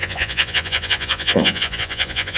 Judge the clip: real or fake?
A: fake